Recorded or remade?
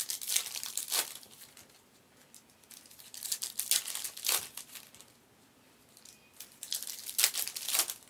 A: remade